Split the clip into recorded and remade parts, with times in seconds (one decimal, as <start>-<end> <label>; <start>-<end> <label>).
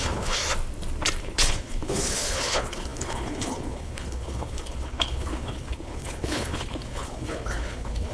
0.0-0.4 remade; 0.4-1.2 recorded; 1.2-8.1 remade